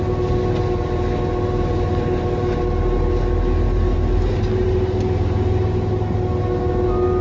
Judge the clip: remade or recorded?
recorded